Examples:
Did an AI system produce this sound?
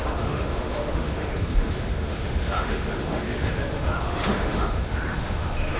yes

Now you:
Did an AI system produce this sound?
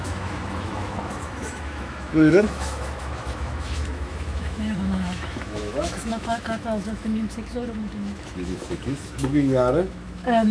yes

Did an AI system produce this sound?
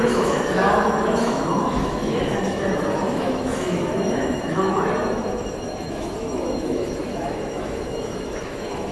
yes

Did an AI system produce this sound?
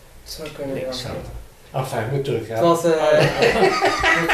no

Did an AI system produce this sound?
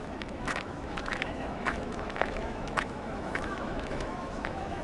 yes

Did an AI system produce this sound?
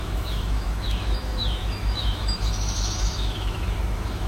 yes